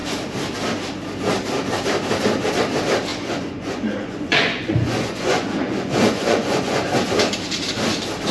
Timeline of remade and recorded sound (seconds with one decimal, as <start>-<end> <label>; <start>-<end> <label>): 0.0-3.1 recorded; 3.1-6.8 remade; 6.8-8.3 recorded